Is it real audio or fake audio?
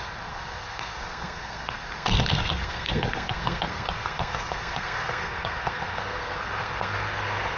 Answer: fake